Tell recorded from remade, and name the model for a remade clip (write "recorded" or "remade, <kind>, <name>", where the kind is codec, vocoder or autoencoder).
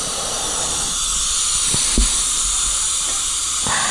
recorded